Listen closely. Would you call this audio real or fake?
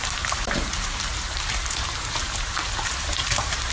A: fake